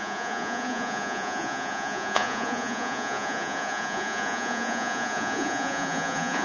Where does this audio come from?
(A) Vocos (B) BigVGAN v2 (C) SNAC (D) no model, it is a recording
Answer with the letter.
A